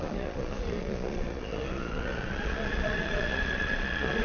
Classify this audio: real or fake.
fake